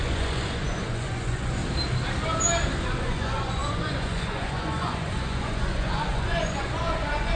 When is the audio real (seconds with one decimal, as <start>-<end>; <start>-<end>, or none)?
1.6-3.0